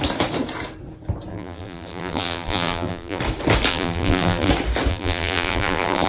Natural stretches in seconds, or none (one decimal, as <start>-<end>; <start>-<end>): 0.0-1.3; 3.2-3.7; 4.5-4.9